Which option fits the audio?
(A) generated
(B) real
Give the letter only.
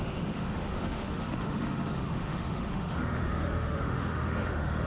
A